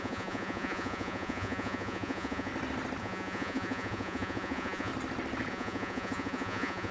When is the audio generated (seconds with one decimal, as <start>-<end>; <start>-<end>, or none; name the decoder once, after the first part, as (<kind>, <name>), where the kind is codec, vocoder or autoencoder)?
0.0-2.5 (vocoder, Vocos); 3.0-4.9; 5.5-6.9